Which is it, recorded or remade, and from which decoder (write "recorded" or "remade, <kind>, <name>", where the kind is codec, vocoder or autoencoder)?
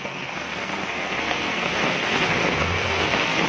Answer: remade, codec, SNAC